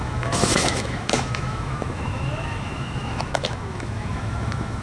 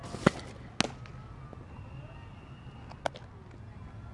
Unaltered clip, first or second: second